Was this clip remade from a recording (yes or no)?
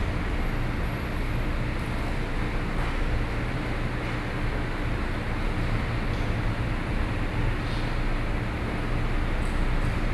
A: no